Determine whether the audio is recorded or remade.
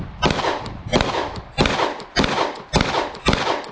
recorded